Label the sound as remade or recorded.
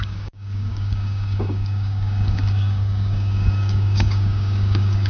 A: remade